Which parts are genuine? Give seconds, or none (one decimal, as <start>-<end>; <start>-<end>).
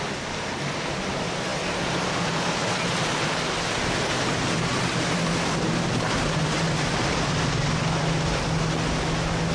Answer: 0.0-1.5; 3.7-4.7; 6.5-9.5